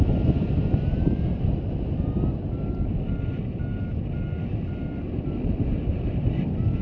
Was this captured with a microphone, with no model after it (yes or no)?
yes